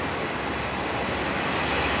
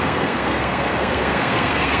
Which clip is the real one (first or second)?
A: first